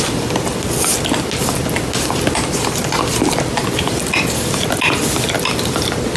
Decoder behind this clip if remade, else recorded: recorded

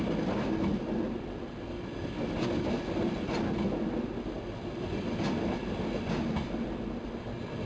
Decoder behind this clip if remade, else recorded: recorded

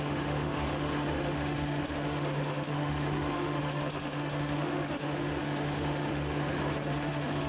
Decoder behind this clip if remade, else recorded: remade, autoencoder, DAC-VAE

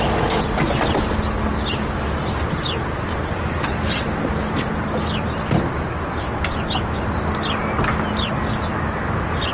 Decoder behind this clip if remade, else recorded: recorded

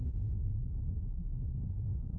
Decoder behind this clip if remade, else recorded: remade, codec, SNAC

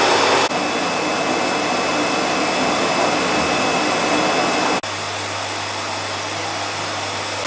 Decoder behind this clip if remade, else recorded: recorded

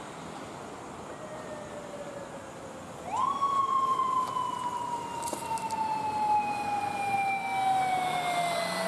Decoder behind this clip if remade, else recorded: recorded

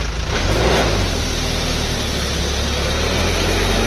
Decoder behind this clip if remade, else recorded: recorded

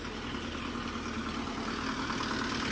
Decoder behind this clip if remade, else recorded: recorded